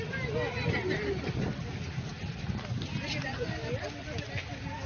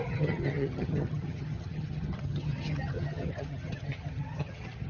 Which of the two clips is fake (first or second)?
second